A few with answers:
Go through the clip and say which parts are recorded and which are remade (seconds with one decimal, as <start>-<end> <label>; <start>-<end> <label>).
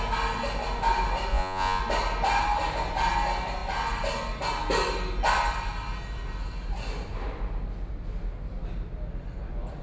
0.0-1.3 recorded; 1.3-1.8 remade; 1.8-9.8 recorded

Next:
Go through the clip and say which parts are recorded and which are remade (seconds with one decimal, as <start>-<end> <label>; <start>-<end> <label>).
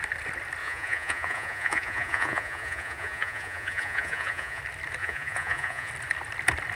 0.0-0.6 recorded; 0.6-4.6 remade; 4.6-5.0 recorded; 5.0-5.9 remade; 5.9-6.8 recorded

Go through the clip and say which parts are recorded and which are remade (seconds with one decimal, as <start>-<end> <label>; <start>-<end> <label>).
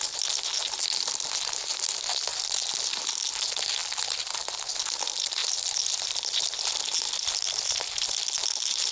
0.0-2.3 recorded; 2.3-2.8 remade; 2.8-3.8 recorded; 3.8-4.5 remade; 4.5-5.4 recorded; 5.4-6.1 remade; 6.1-8.9 recorded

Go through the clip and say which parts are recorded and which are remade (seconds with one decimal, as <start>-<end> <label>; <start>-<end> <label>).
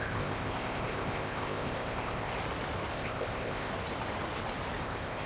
0.0-2.3 remade; 2.3-2.9 recorded; 2.9-3.7 remade; 3.7-4.8 recorded; 4.8-5.3 remade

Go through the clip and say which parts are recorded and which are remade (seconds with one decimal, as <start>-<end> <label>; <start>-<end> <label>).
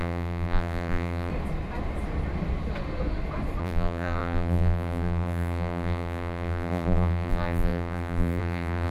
0.0-1.3 remade; 1.3-3.6 recorded; 3.6-8.9 remade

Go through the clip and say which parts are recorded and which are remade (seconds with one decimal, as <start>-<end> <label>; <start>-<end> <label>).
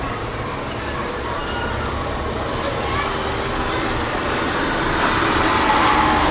0.0-6.3 recorded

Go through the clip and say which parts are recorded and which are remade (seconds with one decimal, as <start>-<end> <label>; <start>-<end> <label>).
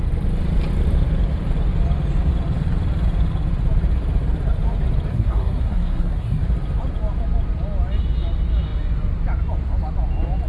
0.0-5.1 recorded; 5.1-6.4 remade; 6.4-10.5 recorded